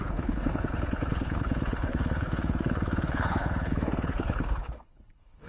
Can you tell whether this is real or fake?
fake